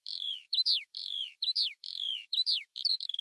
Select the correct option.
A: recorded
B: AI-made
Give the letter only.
B